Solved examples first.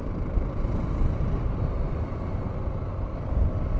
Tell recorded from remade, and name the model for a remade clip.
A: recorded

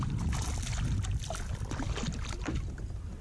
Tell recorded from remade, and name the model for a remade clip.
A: recorded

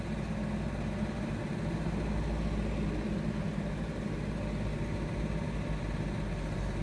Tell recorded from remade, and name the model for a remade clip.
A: recorded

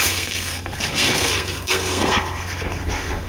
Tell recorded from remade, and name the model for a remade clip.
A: remade, codec, SNAC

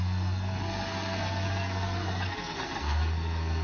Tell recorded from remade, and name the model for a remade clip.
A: remade, codec, SNAC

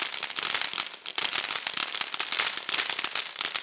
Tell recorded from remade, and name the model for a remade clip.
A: recorded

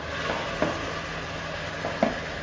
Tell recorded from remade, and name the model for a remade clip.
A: recorded